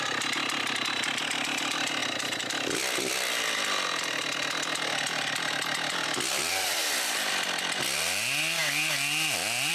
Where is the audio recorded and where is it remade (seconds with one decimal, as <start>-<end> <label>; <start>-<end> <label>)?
0.0-9.7 recorded